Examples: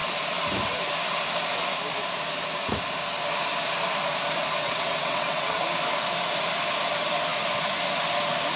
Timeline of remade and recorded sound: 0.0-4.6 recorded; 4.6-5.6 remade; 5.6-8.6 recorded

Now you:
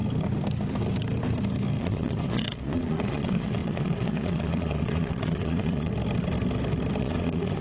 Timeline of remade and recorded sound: 0.0-1.8 recorded; 1.8-5.9 remade; 5.9-7.0 recorded; 7.0-7.6 remade